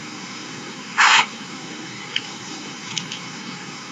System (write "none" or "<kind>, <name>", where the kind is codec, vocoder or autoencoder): codec, SNAC